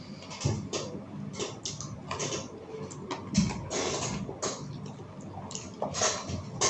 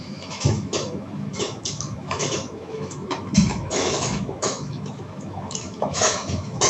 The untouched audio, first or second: first